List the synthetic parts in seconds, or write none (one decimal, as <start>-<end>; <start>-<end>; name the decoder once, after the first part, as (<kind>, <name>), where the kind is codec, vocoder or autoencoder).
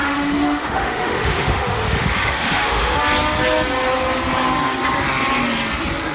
0.0-3.0 (autoencoder, DAC-VAE)